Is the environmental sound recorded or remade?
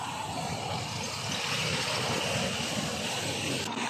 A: recorded